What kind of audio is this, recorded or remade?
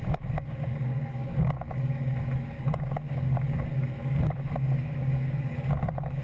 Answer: remade